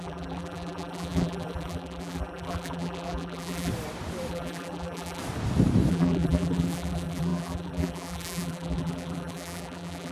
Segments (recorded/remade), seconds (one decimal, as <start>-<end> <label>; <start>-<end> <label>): 0.0-3.7 remade; 3.7-4.3 recorded; 4.3-5.2 remade; 5.2-5.9 recorded; 5.9-10.1 remade